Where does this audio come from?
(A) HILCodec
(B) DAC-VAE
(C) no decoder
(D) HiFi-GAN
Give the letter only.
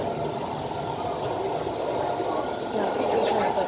C